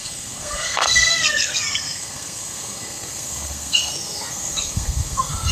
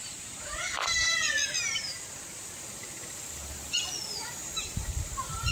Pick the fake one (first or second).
first